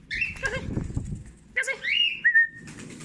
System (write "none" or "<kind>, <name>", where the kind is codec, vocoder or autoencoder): none